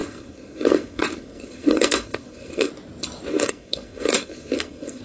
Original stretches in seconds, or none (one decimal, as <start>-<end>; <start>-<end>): 2.7-3.3